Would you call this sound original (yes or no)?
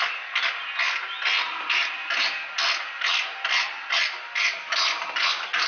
yes